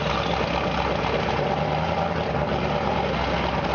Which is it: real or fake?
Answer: real